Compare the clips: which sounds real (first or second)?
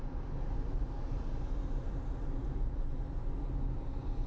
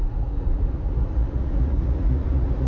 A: first